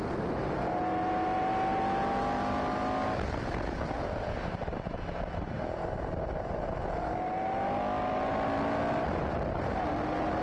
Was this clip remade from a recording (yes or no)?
no